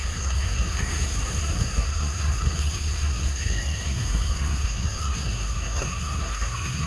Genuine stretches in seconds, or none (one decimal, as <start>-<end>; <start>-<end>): none